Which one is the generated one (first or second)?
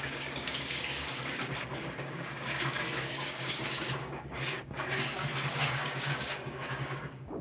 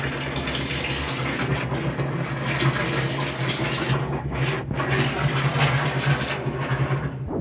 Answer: first